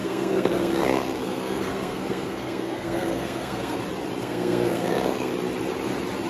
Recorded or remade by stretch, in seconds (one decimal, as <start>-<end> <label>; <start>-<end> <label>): 0.0-3.8 remade; 3.8-4.2 recorded; 4.2-5.3 remade; 5.3-6.3 recorded